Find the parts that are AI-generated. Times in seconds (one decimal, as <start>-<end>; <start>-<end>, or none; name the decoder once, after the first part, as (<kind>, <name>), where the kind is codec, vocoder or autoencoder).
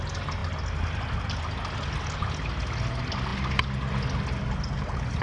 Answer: none